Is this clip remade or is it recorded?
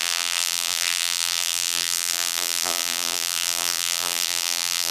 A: remade